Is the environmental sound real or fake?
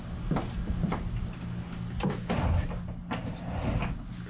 real